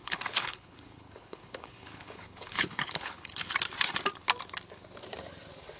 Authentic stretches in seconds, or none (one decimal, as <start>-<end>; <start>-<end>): 3.5-5.8